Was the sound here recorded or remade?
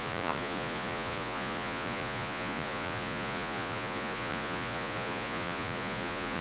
remade